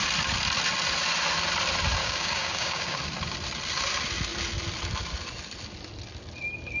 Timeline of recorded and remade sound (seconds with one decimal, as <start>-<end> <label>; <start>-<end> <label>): 0.0-2.0 recorded; 2.0-3.0 remade; 3.0-6.8 recorded

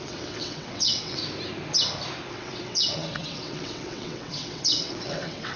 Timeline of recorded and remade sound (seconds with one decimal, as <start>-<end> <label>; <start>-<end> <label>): 0.0-1.2 remade; 1.2-2.3 recorded; 2.3-5.6 remade

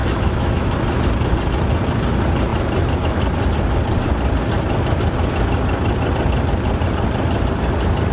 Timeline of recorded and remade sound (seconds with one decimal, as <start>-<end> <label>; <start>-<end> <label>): 0.0-0.7 remade; 0.7-8.1 recorded

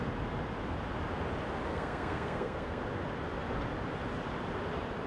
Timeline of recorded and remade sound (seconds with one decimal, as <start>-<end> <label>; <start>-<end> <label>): 0.0-1.7 recorded; 1.7-2.8 remade; 2.8-5.1 recorded

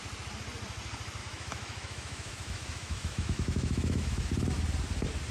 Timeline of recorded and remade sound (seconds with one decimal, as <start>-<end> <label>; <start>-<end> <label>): 0.0-1.2 recorded; 1.2-4.3 remade; 4.3-5.3 recorded

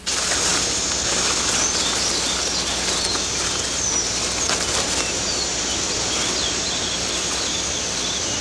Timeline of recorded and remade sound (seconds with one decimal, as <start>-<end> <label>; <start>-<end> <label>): 0.0-8.4 recorded